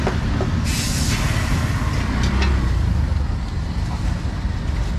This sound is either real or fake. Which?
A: real